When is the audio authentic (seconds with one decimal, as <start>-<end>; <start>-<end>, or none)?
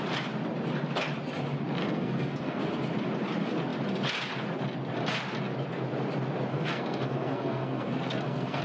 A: 0.0-1.8; 2.6-6.5